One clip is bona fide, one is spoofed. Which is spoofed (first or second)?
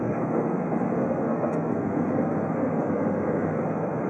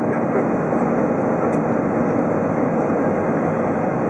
first